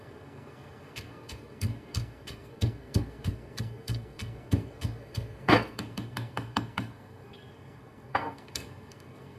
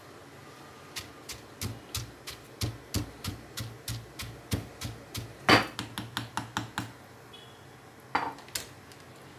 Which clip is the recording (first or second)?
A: second